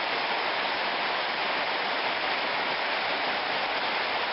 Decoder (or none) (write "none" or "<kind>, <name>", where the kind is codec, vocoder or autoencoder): none